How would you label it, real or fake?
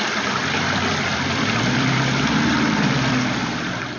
fake